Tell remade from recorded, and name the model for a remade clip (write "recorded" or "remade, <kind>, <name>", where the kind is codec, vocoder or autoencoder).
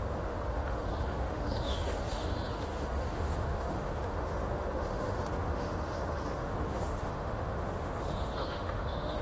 remade, autoencoder, DAC-VAE